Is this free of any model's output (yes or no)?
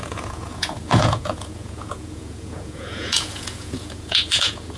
no